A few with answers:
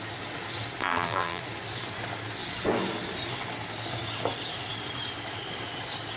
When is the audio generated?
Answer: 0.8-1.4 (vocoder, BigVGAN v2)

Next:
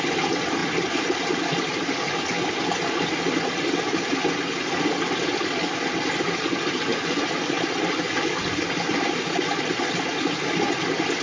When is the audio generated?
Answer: 6.9-7.5 (vocoder, BigVGAN v2)

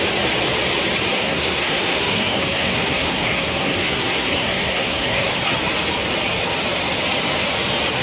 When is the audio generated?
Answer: 1.1-5.3 (codec, SNAC)

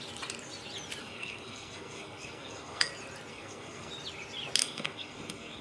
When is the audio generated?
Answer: 1.0-2.9 (codec, SNAC); 3.3-3.9; 4.6-5.6

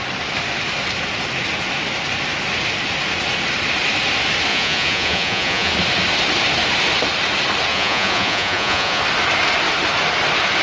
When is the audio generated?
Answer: 4.5-5.7 (vocoder, Vocos); 7.7-9.0

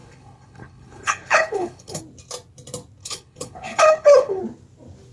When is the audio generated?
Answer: 0.0-2.0 (codec, HILCodec); 3.0-4.4

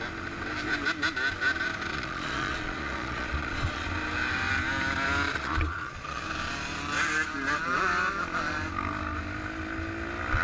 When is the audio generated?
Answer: 1.9-3.9 (vocoder, Vocos); 5.3-6.2